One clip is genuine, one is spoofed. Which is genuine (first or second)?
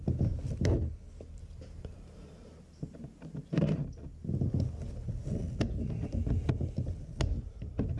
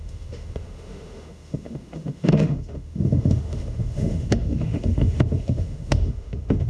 first